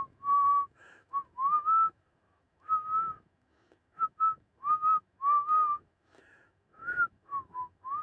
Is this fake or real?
fake